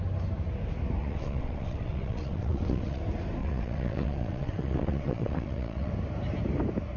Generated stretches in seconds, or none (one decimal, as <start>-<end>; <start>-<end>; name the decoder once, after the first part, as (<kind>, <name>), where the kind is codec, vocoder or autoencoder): 1.0-3.0 (vocoder, WaveNeXt); 3.4-5.9

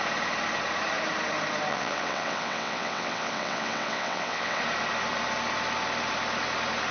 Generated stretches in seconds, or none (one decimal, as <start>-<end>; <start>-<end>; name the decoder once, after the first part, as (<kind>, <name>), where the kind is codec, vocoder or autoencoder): 1.7-4.6 (vocoder, WaveNeXt)

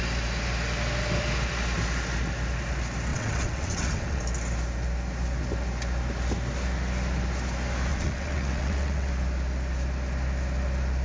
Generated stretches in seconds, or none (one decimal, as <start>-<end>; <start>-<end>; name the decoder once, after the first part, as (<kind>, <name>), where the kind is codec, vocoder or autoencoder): 3.1-4.2 (vocoder, WaveNeXt); 7.9-9.1

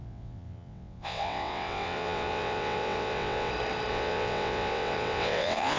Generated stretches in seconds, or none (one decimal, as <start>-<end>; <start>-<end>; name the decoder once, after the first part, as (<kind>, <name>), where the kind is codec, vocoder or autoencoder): 0.0-3.5 (vocoder, WaveNeXt); 3.9-5.8